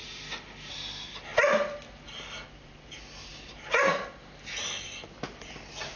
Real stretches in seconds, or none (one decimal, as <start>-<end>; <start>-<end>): 0.7-6.0